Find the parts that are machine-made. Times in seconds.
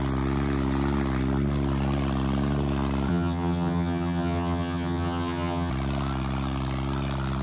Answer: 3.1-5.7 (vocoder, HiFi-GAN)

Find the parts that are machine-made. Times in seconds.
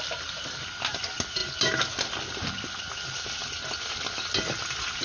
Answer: none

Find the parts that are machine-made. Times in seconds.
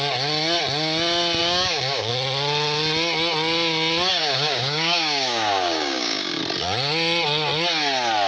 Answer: 1.4-2.1 (codec, DAC); 4.2-6.4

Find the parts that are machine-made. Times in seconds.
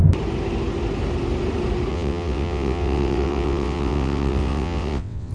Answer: 1.9-5.3 (vocoder, WaveNeXt)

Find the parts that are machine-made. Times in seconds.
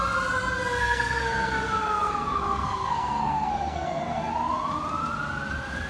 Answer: 0.8-4.3 (codec, SNAC)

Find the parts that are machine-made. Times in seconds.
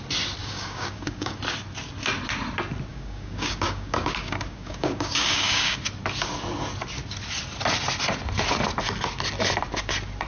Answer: 0.4-1.4 (codec, DAC); 2.9-5.8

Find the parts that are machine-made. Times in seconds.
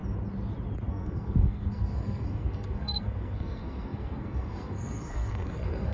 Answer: 0.9-5.9 (codec, SNAC)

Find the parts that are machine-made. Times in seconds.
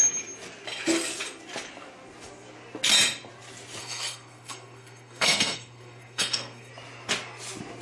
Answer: 3.8-6.7 (codec, SNAC)